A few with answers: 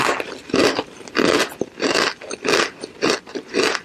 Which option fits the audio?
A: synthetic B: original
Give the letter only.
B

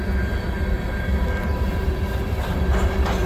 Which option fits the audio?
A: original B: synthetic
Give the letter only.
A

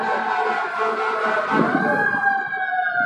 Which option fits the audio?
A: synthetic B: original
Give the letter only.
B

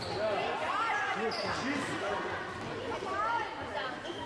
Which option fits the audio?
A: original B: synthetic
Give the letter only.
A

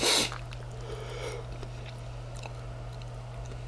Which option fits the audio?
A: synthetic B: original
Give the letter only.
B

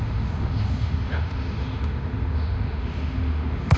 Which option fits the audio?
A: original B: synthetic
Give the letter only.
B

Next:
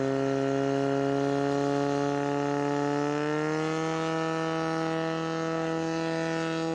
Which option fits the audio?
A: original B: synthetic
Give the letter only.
A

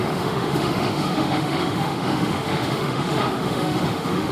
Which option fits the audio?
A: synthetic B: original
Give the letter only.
A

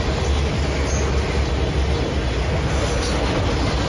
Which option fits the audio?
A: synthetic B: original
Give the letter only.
B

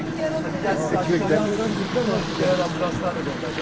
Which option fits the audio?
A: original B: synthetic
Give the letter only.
A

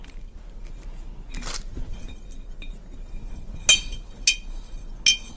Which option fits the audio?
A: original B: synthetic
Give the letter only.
A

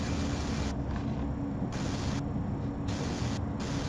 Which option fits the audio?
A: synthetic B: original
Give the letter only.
B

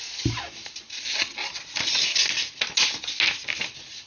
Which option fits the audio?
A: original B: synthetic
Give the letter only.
A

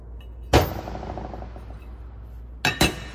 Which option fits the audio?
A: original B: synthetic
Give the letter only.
A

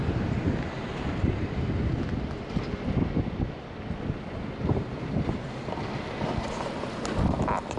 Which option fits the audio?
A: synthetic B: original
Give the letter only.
B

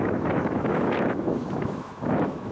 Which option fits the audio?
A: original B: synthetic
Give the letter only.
B